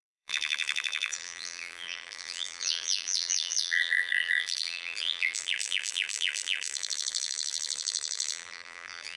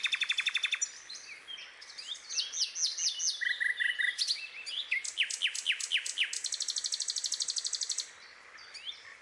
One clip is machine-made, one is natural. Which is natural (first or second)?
second